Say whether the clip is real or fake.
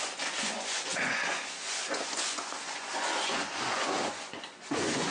fake